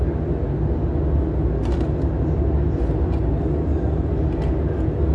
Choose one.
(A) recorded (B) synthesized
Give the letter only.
A